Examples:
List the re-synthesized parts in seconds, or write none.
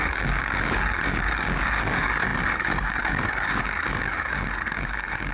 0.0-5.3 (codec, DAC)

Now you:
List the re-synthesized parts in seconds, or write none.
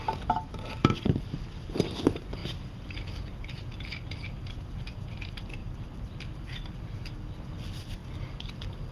none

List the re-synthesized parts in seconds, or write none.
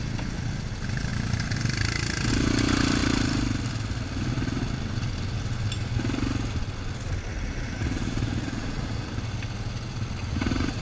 7.3-9.1 (vocoder, Vocos); 10.2-10.8